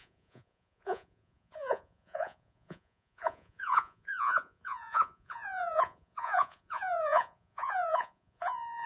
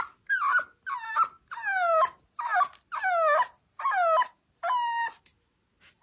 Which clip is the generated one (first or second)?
first